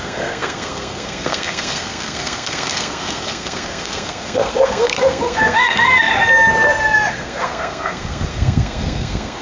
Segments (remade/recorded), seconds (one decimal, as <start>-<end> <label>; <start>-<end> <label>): 0.0-6.1 remade; 6.1-7.1 recorded; 7.1-9.4 remade